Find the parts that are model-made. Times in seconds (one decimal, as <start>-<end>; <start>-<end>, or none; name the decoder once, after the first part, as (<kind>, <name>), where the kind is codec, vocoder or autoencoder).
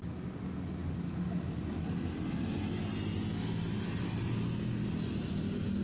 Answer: none